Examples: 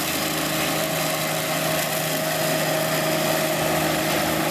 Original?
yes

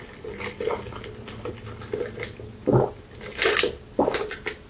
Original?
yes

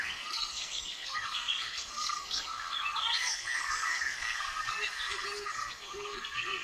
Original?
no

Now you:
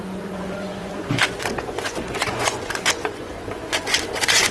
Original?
no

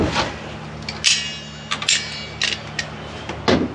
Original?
yes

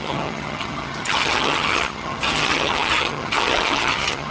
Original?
no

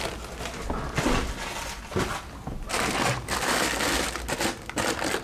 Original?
yes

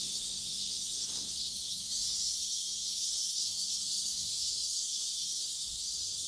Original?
no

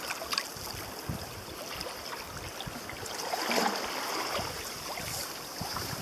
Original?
yes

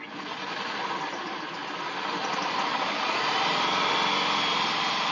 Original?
yes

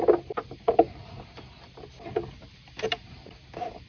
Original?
yes